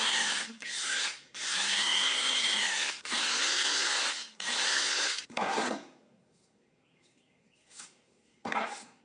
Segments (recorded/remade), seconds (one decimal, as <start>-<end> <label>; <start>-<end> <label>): 0.0-9.0 remade